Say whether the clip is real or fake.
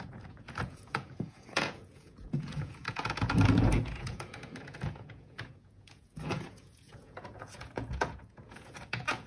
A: fake